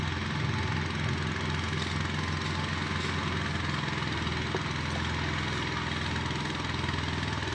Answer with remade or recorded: recorded